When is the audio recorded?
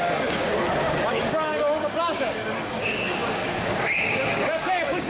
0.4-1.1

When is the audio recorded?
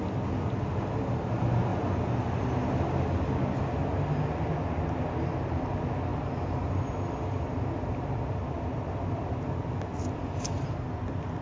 0.0-1.7; 2.8-11.4